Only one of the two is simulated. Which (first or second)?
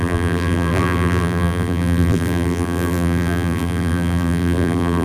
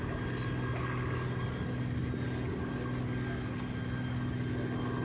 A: first